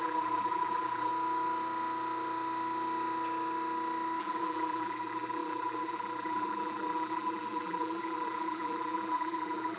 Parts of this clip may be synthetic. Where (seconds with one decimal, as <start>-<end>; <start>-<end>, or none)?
0.0-1.1; 4.2-9.8